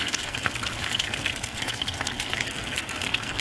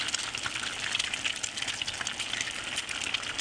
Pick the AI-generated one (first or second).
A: first